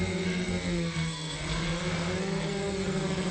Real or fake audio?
fake